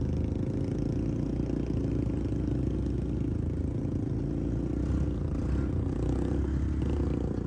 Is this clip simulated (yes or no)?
no